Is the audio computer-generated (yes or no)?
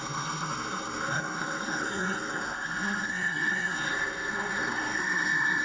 yes